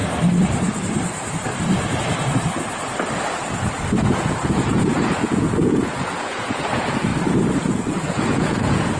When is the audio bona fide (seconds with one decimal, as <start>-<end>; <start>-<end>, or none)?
0.0-4.0; 7.1-7.6